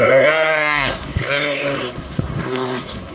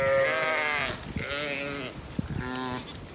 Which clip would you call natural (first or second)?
second